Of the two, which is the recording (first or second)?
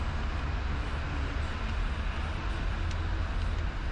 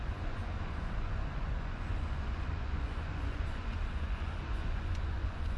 first